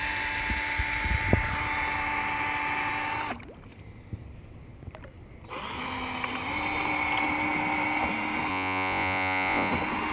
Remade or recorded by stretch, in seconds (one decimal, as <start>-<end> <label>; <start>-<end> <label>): 0.0-8.5 recorded; 8.5-9.7 remade; 9.7-10.1 recorded